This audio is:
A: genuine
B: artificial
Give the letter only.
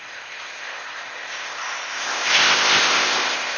B